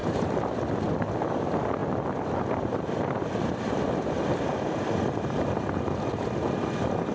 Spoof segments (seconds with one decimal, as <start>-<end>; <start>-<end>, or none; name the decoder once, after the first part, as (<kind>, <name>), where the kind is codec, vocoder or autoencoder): 0.0-0.9 (vocoder, BigVGAN v2)